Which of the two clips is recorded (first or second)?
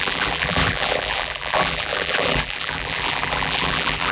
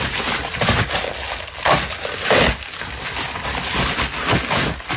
second